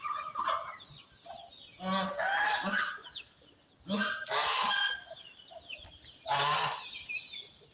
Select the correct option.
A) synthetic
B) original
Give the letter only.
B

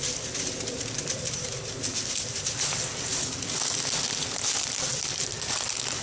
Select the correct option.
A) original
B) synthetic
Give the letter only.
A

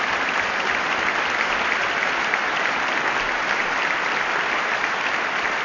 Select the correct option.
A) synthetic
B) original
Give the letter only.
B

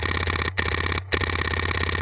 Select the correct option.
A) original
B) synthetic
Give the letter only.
A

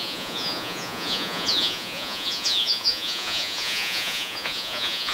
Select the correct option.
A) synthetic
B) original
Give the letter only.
A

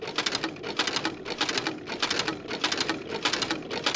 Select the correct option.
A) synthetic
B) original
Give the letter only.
B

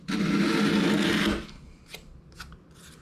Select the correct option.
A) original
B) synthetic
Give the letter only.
A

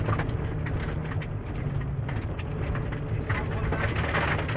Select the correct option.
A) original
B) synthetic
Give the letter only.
A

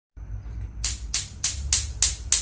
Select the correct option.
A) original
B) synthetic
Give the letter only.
A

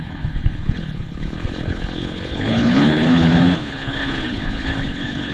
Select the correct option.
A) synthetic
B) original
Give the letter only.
A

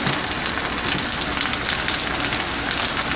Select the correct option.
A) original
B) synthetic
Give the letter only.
A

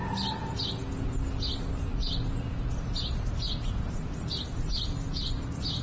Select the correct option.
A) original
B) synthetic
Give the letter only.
A